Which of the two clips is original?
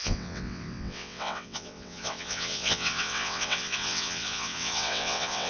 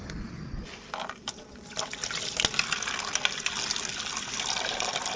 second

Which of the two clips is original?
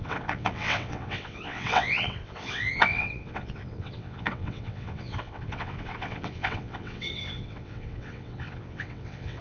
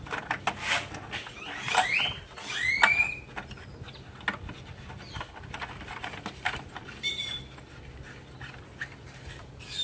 second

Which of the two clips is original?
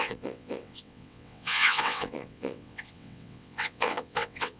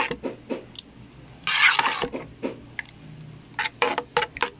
second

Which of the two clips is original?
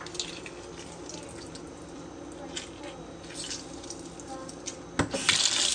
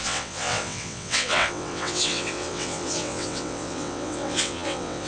first